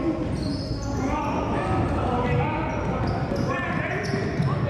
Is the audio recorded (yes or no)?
yes